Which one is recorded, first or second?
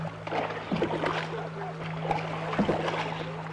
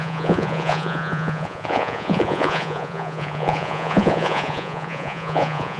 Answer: first